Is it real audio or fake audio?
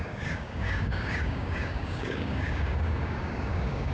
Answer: fake